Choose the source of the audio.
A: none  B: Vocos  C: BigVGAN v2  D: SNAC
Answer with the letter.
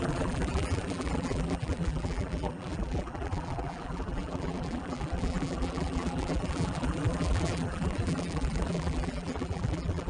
C